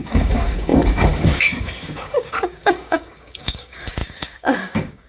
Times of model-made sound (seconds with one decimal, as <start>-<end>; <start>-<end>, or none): 0.0-5.1